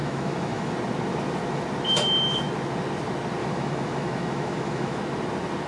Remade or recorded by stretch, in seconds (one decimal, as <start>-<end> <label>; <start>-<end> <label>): 0.0-0.7 remade; 0.7-3.4 recorded; 3.4-5.0 remade; 5.0-5.7 recorded